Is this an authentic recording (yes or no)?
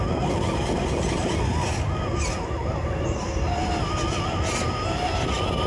yes